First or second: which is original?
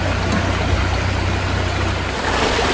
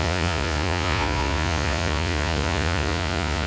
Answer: first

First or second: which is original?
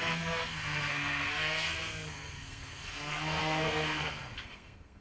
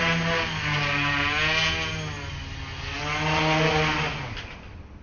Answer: second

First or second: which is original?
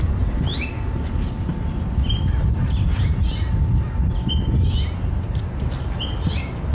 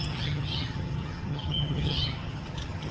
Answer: first